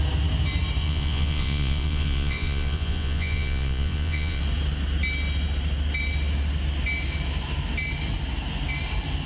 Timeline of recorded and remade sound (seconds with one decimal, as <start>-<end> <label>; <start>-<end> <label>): 0.0-0.8 recorded; 0.8-4.4 remade; 4.4-9.3 recorded